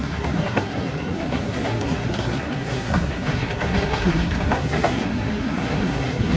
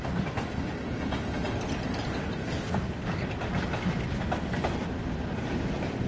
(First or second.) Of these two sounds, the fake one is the first